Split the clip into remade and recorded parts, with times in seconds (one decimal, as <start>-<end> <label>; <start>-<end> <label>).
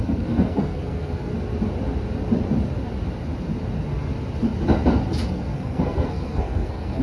0.0-1.3 remade; 1.3-5.3 recorded; 5.3-7.0 remade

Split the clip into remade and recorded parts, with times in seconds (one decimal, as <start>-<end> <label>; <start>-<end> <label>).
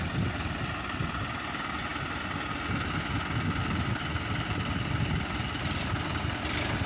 0.0-1.9 remade; 1.9-5.3 recorded; 5.3-6.9 remade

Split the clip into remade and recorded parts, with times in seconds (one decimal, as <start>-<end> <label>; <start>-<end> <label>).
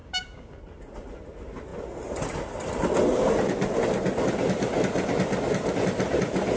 0.0-0.6 remade; 0.6-6.6 recorded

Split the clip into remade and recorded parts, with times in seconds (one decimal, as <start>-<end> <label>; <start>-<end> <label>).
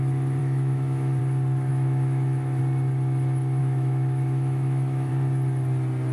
0.0-0.4 recorded; 0.4-1.2 remade; 1.2-1.7 recorded; 1.7-2.6 remade; 2.6-3.6 recorded; 3.6-5.1 remade; 5.1-6.1 recorded